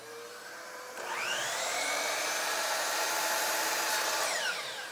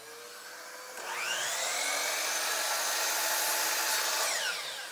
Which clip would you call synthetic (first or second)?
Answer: first